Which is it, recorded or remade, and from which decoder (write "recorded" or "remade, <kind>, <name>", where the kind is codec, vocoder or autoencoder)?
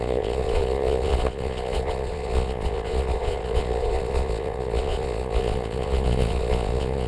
remade, vocoder, Vocos